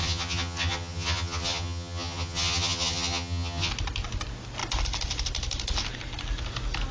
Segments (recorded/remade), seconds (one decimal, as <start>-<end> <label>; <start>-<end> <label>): 0.0-3.7 remade; 3.7-6.9 recorded